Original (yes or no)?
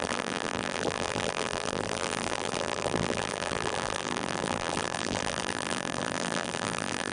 no